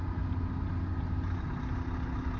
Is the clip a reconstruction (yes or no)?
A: no